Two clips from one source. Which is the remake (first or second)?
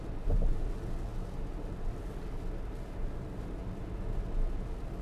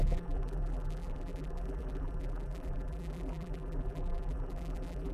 second